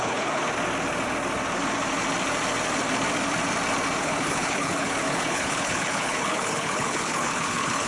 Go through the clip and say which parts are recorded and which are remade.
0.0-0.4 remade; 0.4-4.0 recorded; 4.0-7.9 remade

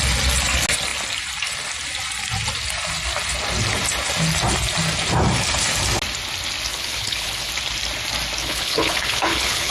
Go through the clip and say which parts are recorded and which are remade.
0.0-6.7 recorded; 6.7-7.5 remade; 7.5-8.4 recorded; 8.4-9.7 remade

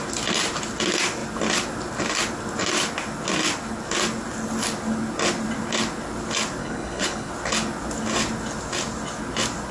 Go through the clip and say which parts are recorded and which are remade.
0.0-6.6 recorded; 6.6-7.3 remade; 7.3-9.7 recorded

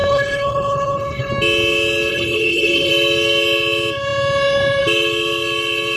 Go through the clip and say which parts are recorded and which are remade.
0.0-1.3 remade; 1.3-2.1 recorded; 2.1-2.9 remade; 2.9-6.0 recorded